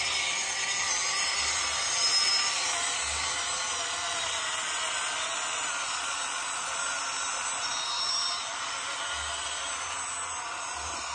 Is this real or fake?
real